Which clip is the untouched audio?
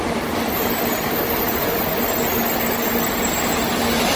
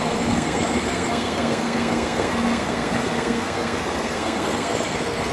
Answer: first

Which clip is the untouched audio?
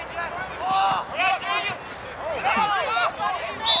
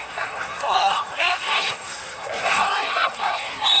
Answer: first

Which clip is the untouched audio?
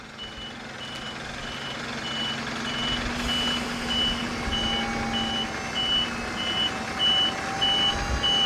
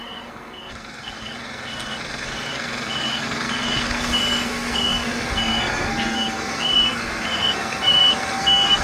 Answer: first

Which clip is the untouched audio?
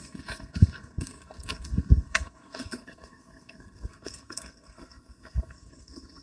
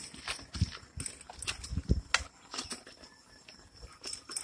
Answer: second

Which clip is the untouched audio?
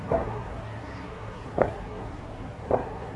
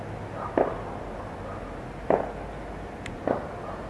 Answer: second